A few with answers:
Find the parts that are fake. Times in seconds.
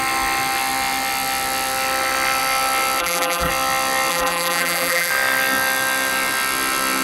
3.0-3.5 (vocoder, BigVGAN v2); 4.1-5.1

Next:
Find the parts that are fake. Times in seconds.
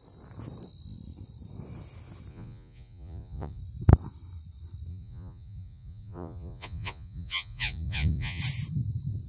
2.3-3.6 (vocoder, Vocos); 4.9-8.4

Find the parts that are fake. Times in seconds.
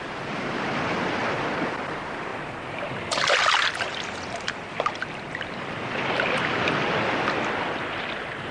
0.0-2.3 (vocoder, BigVGAN v2); 2.8-8.5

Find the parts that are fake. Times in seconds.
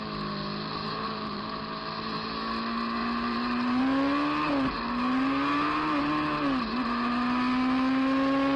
0.8-1.6 (vocoder, BigVGAN v2); 3.0-3.8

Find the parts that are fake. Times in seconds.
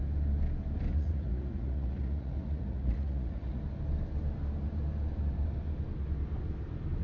0.9-3.6 (vocoder, Vocos)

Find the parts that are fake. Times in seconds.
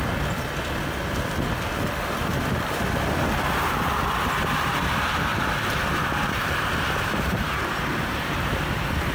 5.3-8.6 (vocoder, BigVGAN v2)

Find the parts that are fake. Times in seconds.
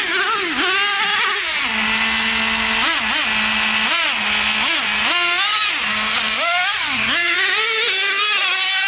none